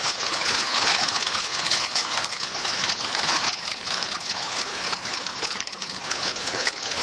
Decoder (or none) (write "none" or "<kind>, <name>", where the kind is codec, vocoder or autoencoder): codec, HILCodec